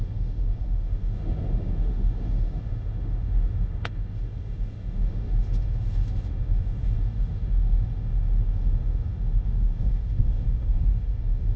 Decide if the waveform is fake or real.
fake